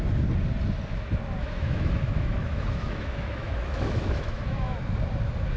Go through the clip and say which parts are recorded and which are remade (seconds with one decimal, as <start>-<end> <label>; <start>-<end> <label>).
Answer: 0.0-1.4 recorded; 1.4-4.8 remade; 4.8-5.6 recorded